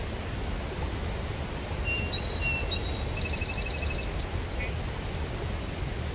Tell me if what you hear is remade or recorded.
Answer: recorded